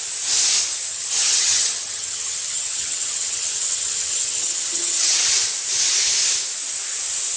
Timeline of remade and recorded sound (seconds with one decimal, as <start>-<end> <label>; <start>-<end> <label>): 0.0-0.9 recorded; 0.9-5.3 remade; 5.3-7.4 recorded